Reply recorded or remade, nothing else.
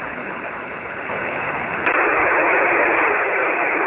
remade